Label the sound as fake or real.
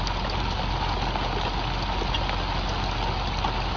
real